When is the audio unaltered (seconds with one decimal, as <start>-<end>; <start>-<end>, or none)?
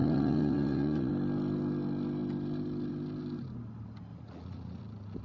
1.1-4.1; 4.8-5.2